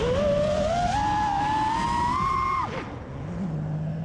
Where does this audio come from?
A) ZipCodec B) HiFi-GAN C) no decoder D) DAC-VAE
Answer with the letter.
C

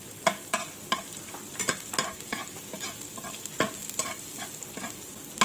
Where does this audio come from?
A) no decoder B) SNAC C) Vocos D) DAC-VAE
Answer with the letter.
A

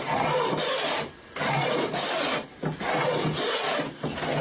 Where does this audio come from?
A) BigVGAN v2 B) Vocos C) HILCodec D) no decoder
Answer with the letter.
D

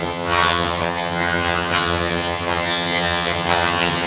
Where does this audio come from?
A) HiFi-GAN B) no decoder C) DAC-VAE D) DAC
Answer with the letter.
A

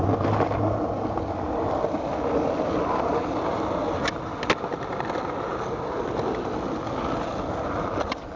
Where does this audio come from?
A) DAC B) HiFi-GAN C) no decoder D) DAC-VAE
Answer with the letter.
C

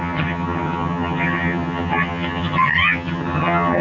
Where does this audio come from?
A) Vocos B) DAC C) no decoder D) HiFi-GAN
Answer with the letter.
D